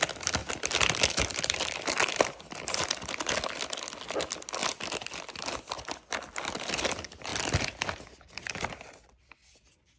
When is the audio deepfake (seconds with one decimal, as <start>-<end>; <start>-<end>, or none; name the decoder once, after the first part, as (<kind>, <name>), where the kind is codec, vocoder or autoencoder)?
0.4-2.3 (vocoder, BigVGAN v2); 4.6-5.4; 7.3-10.0